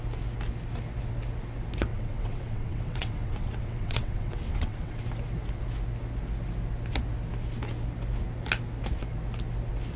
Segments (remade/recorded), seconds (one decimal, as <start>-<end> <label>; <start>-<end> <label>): 0.0-1.9 recorded; 1.9-5.0 remade; 5.0-10.0 recorded